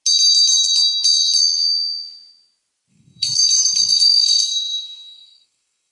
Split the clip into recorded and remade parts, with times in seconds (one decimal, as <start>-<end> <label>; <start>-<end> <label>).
0.0-2.9 recorded; 2.9-5.9 remade